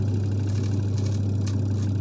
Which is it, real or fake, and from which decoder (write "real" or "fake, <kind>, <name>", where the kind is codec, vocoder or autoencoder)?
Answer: real